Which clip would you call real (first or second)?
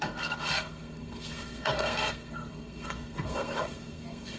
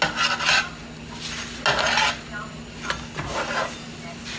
second